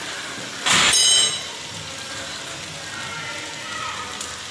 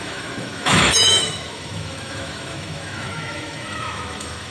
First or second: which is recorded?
first